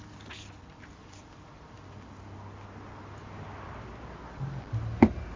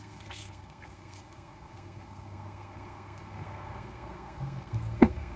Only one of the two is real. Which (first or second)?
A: first